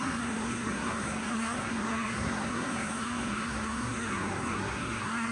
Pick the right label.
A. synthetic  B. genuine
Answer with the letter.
A